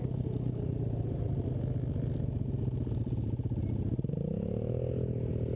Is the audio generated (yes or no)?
no